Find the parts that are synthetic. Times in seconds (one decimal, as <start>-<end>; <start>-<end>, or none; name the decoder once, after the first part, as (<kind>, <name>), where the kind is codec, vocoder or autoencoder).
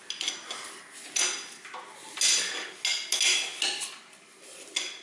none